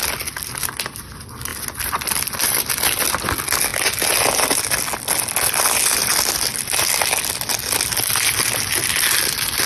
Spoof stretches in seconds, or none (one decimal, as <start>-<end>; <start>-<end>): none